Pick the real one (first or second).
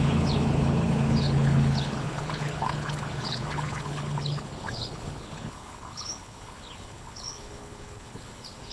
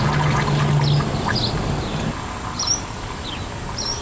second